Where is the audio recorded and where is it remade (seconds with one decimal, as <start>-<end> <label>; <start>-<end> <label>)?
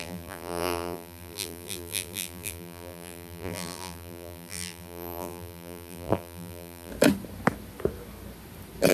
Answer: 0.0-6.9 remade; 6.9-8.9 recorded